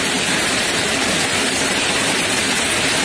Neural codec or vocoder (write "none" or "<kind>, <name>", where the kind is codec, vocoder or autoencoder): none